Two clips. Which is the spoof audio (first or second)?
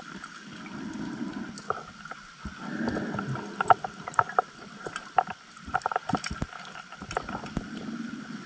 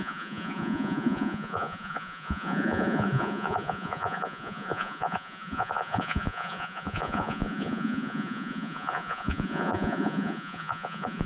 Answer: second